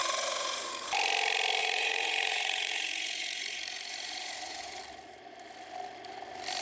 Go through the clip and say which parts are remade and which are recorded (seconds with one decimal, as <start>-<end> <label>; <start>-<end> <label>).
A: 0.0-0.9 remade; 0.9-1.6 recorded; 1.6-4.8 remade; 4.8-6.6 recorded